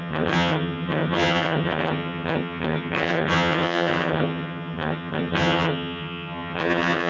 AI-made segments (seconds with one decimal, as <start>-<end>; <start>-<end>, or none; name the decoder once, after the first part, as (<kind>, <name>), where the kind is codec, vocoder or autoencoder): 0.0-7.1 (vocoder, HiFi-GAN)